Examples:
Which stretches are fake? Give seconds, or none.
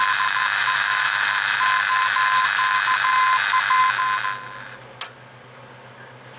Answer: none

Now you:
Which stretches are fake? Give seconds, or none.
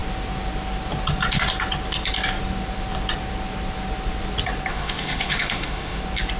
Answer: 4.7-6.0 (autoencoder, DAC-VAE)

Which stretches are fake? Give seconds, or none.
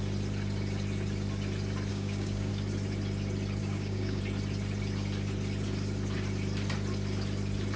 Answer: 1.9-2.5 (codec, DAC); 3.6-4.2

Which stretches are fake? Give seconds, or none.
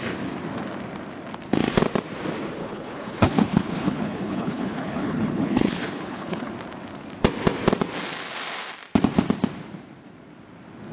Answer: 2.6-6.5 (codec, HILCodec)